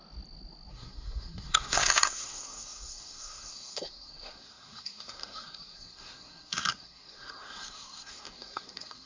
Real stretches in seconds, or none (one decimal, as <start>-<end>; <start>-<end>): 0.0-0.7